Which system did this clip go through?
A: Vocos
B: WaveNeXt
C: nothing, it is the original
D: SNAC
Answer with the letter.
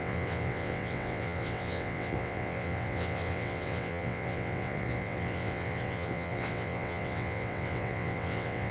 B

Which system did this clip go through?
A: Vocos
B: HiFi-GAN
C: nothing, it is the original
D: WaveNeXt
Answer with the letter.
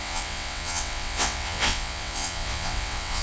D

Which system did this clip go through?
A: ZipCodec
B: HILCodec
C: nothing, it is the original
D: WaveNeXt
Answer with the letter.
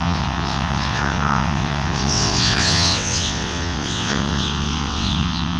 D